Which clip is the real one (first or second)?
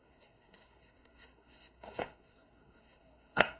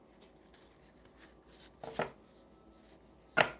second